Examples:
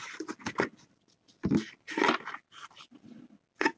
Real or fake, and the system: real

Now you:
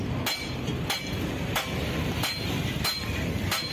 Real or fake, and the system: real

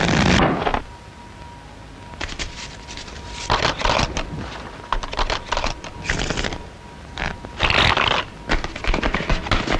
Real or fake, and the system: real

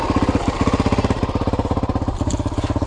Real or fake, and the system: real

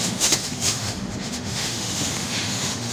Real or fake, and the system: fake, autoencoder, DAC-VAE